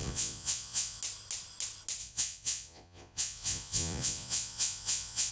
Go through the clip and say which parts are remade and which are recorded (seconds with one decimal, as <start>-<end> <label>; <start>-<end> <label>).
0.0-1.0 remade; 1.0-2.0 recorded; 2.0-5.3 remade